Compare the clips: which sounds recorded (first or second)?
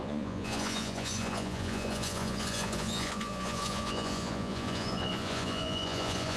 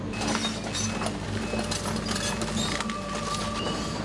second